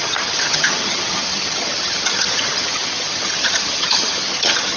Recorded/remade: remade